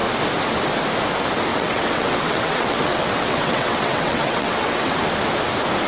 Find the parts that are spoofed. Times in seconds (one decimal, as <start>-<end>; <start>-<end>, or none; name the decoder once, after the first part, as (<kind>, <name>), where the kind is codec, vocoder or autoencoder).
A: 1.5-5.0 (vocoder, WaveNeXt)